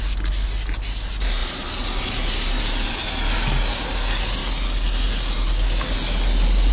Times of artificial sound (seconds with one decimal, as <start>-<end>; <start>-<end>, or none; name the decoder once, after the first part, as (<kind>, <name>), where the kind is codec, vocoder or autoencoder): none